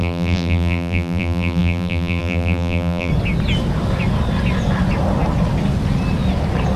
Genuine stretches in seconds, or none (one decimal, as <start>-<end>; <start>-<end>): 3.1-6.8